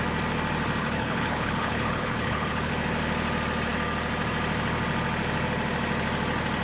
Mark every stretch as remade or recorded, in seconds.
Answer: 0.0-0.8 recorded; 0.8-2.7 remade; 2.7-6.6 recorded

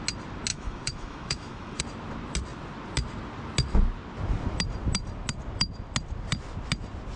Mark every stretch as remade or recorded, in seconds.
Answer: 0.0-0.5 recorded; 0.5-1.8 remade; 1.8-7.2 recorded